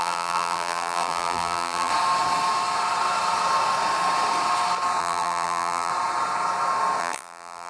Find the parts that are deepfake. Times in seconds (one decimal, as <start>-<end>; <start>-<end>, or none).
0.0-1.9; 5.0-5.9; 7.0-7.7